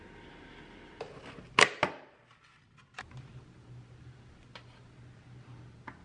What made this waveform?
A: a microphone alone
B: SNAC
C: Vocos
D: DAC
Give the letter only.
A